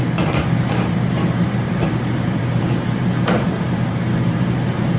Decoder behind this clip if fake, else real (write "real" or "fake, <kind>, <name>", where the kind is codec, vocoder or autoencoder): fake, vocoder, BigVGAN v2